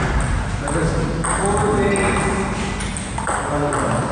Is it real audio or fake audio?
real